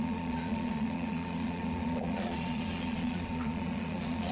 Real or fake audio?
fake